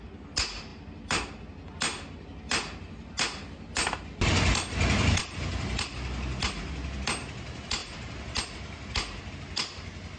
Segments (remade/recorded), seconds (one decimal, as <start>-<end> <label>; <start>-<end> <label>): 0.0-10.2 recorded